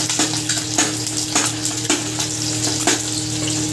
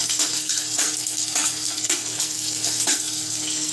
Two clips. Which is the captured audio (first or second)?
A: first